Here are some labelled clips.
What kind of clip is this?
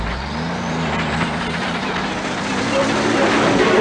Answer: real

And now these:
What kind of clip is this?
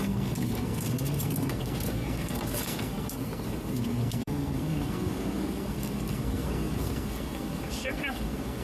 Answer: fake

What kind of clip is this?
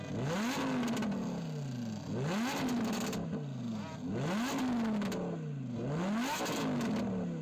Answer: real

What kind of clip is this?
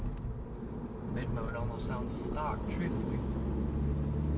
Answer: real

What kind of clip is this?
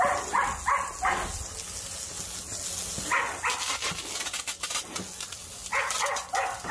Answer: real